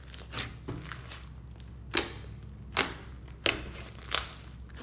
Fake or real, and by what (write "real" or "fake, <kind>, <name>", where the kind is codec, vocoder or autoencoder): real